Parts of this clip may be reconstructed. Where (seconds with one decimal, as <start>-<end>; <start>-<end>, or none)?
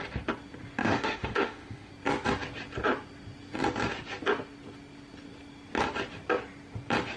0.8-1.9